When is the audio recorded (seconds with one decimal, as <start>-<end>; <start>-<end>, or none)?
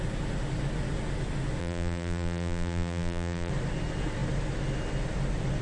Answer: 0.0-1.6; 3.5-5.6